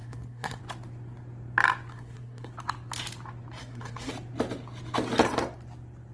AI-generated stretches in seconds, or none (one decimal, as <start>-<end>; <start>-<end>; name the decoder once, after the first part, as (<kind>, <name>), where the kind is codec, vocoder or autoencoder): 0.0-0.6 (codec, SNAC); 1.9-2.5; 3.6-4.1